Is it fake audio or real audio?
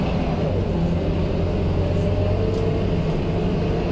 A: real